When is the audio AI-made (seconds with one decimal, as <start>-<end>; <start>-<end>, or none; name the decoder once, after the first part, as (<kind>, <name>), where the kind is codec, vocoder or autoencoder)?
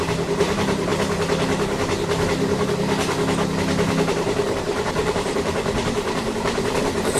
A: 0.0-0.9 (vocoder, BigVGAN v2); 4.1-7.2